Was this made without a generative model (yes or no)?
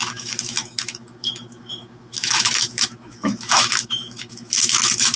no